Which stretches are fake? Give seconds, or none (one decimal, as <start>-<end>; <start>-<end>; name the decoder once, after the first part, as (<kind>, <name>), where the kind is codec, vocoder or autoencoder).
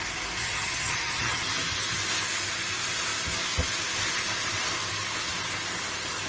0.4-1.4 (vocoder, HiFi-GAN)